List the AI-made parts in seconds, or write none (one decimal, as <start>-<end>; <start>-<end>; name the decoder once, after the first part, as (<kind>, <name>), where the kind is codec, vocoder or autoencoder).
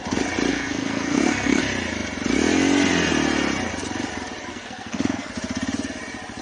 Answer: 0.5-1.6 (codec, SNAC); 4.5-5.3